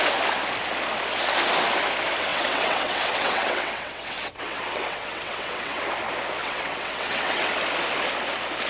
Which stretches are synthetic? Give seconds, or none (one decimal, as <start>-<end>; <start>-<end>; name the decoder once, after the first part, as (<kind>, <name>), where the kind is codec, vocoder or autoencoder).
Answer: 2.3-5.8 (vocoder, WaveNeXt); 6.4-7.6